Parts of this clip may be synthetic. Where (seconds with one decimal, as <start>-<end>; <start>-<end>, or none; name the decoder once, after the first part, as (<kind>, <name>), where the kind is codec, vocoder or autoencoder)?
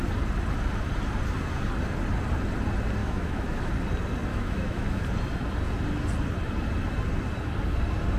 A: 3.0-3.7 (autoencoder, DAC-VAE); 4.3-5.0